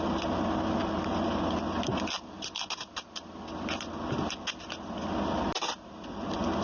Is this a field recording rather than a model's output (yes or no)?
yes